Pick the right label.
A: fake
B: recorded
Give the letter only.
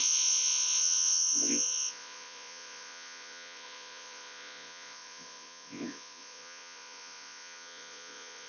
A